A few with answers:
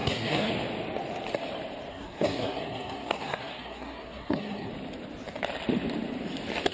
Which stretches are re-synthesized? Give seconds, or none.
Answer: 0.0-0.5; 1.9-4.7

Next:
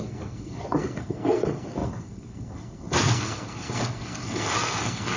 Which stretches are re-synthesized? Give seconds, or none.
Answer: 0.0-5.2

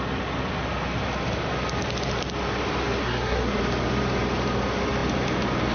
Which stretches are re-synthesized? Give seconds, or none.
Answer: 3.0-3.6

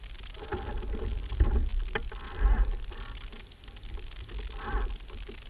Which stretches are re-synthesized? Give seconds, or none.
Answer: none

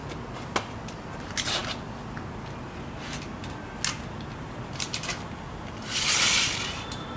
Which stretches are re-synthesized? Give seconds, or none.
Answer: none

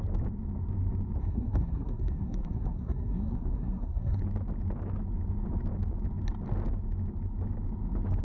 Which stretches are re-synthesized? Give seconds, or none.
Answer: 1.2-4.2

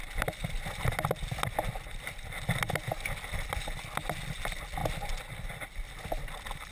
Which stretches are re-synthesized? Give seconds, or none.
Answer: none